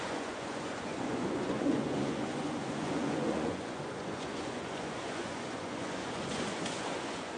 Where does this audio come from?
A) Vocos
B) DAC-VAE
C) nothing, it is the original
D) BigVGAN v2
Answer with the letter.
A